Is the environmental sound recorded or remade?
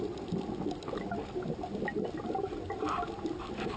recorded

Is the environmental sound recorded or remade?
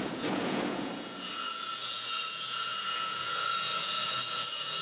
remade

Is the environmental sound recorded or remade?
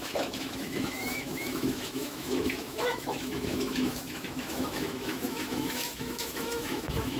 remade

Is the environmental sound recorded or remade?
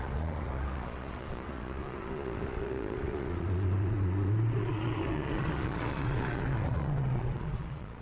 remade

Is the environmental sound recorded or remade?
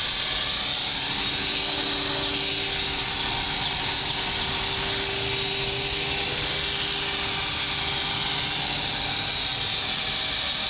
recorded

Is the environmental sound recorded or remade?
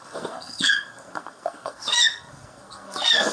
remade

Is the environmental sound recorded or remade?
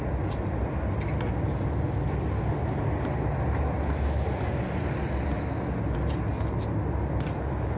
recorded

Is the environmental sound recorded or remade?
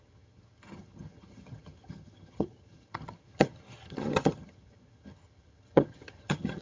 remade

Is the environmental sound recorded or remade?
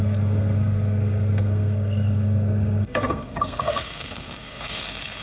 remade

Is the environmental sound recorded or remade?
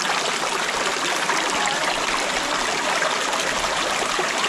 recorded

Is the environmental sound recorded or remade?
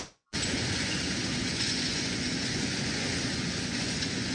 remade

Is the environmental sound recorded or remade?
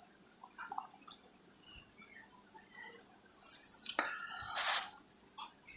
recorded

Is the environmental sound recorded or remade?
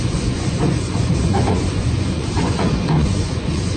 remade